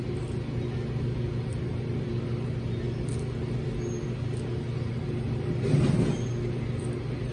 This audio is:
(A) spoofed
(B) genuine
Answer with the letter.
B